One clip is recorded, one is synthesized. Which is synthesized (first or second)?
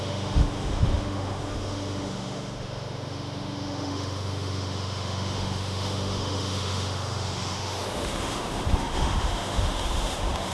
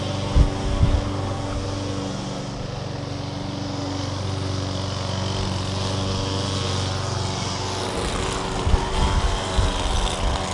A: first